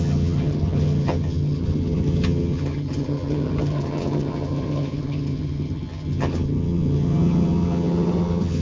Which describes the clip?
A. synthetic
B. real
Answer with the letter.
A